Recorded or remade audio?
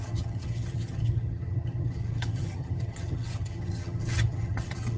remade